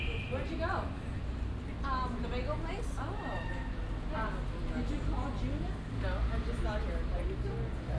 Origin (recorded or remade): recorded